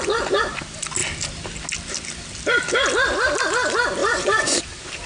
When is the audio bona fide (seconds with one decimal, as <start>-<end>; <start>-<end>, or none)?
0.0-4.0; 4.6-5.1